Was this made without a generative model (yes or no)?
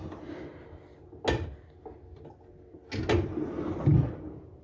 yes